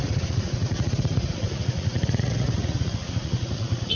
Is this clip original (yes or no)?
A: no